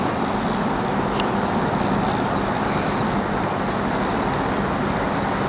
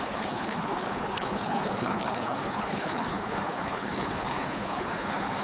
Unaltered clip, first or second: first